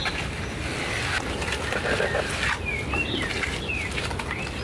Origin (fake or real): real